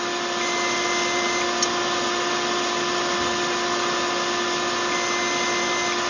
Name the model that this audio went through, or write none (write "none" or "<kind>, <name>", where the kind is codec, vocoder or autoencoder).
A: none